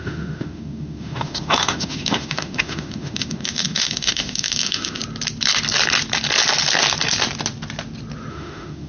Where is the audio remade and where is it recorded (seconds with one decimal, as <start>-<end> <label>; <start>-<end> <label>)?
0.0-5.0 remade; 5.0-8.3 recorded; 8.3-8.9 remade